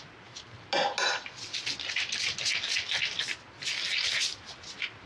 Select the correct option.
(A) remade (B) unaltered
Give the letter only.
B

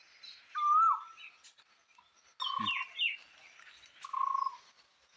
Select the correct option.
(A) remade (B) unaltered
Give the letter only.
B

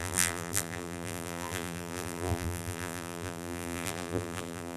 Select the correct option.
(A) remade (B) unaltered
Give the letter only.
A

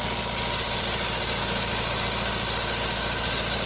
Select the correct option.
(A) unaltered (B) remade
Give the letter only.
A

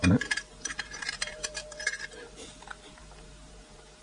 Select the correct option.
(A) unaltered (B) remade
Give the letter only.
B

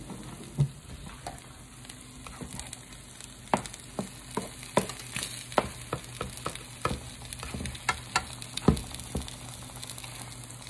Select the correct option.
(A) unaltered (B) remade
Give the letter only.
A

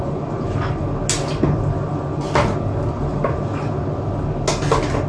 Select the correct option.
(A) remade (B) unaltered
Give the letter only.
B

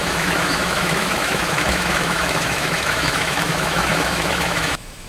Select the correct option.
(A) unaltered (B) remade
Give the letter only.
B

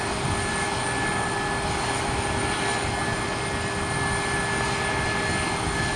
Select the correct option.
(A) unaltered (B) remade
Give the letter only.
A